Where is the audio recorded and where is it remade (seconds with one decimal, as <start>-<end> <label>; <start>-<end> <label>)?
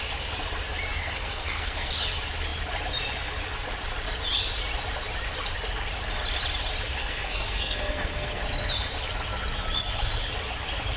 0.0-1.0 recorded; 1.0-1.9 remade; 1.9-7.0 recorded; 7.0-8.4 remade; 8.4-11.0 recorded